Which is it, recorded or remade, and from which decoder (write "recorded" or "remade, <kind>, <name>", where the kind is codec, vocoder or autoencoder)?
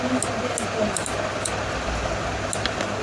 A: recorded